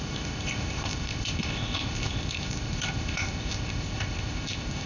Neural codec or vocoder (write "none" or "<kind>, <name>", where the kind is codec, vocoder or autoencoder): codec, ZipCodec